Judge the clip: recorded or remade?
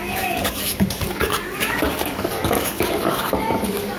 remade